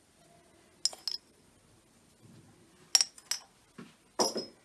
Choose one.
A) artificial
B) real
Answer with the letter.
B